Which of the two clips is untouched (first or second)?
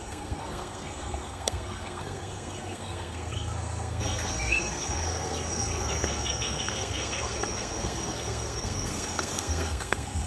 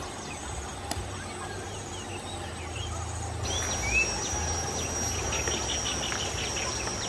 second